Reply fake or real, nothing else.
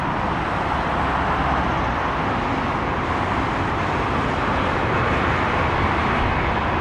real